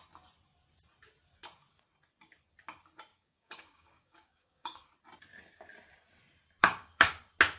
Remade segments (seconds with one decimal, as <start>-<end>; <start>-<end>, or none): 3.1-4.9; 6.6-7.1